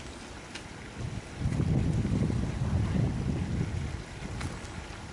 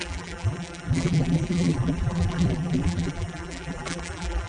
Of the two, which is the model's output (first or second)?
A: second